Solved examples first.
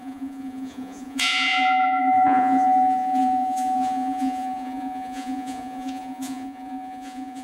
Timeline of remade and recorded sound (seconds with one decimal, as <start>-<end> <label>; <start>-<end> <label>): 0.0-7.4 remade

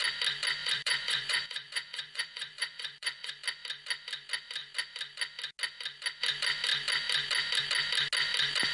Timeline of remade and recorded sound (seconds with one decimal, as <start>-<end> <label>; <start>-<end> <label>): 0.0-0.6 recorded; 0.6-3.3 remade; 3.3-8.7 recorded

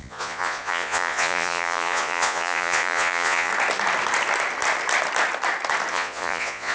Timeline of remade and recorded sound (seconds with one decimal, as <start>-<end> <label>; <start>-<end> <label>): 0.0-3.5 remade; 3.5-5.9 recorded; 5.9-6.7 remade

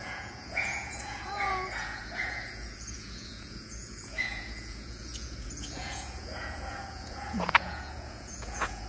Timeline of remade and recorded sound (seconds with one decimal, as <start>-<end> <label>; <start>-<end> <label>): 0.0-8.9 remade

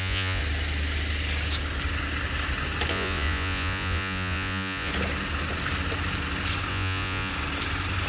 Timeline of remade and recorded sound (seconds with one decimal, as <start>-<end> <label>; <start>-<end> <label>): 0.0-0.4 remade; 0.4-2.9 recorded; 2.9-4.9 remade; 4.9-6.7 recorded; 6.7-7.3 remade; 7.3-8.1 recorded

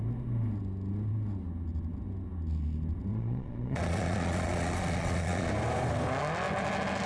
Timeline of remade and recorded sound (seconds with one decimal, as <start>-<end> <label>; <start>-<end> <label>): 0.0-3.1 recorded; 3.1-5.5 remade; 5.5-7.1 recorded